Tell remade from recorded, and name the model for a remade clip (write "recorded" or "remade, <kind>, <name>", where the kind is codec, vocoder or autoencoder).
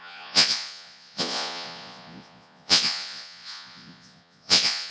remade, vocoder, Vocos